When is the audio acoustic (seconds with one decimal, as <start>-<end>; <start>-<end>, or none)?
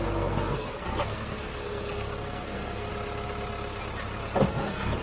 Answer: 2.9-4.5